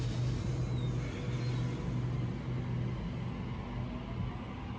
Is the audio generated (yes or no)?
no